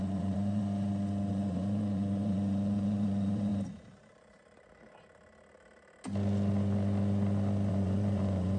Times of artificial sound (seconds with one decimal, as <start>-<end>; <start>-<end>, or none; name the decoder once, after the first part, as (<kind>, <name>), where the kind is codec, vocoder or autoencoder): 0.0-0.6 (vocoder, Vocos); 1.3-3.5; 7.7-8.6